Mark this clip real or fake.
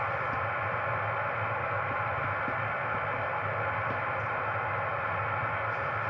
real